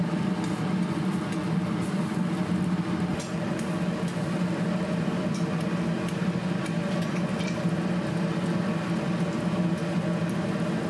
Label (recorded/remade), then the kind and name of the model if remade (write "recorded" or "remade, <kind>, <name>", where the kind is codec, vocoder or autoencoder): recorded